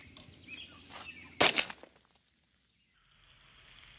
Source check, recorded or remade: recorded